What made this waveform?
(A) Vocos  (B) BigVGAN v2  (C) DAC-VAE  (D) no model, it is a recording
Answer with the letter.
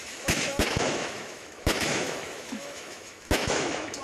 C